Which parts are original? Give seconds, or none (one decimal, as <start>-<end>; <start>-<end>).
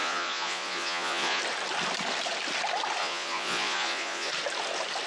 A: 1.4-3.0; 4.3-5.1